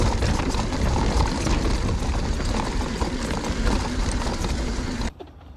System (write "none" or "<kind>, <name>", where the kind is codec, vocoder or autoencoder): none